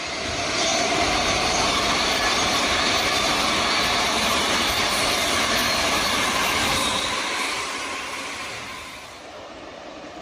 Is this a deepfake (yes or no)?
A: yes